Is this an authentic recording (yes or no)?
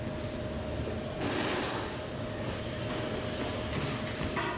yes